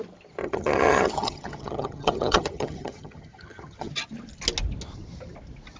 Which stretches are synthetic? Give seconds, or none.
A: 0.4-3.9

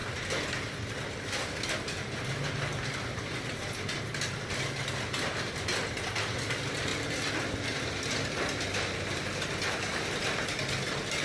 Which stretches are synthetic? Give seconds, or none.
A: none

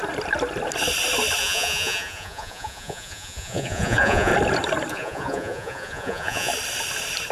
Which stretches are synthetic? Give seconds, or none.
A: 1.4-4.3; 4.9-6.5

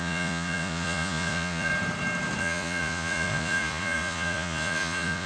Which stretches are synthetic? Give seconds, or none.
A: 0.0-1.7; 2.4-5.3

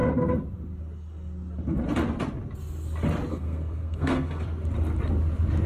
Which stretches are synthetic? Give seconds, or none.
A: 3.3-4.4